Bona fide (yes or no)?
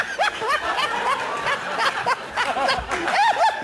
yes